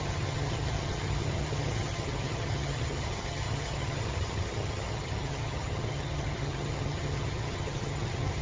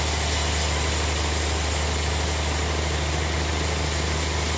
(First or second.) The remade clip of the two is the first